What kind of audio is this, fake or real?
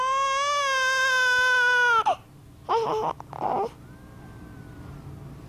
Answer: real